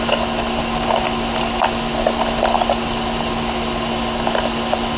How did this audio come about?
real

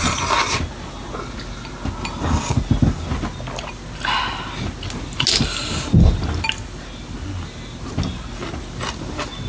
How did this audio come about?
real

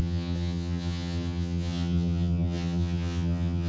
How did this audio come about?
fake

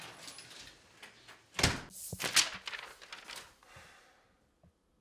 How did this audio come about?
real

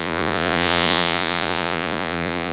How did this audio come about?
fake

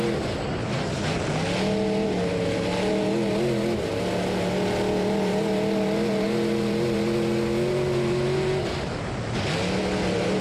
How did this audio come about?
real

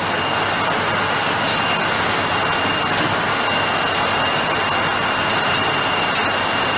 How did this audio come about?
real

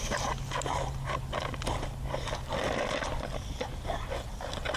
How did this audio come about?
real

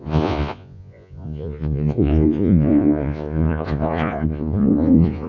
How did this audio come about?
fake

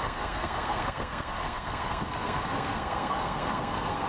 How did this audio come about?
fake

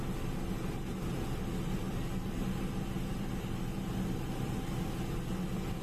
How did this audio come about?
real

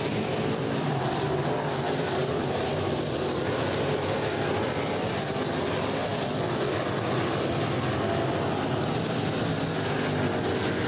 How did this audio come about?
real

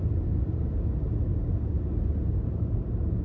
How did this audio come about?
real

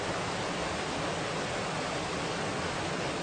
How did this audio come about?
real